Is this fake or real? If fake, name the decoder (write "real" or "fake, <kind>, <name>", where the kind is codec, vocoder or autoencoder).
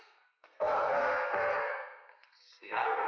fake, codec, SNAC